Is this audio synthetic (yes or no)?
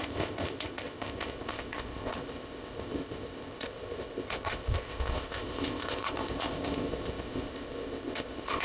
yes